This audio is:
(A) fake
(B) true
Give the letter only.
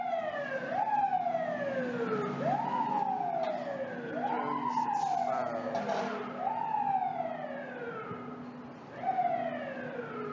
B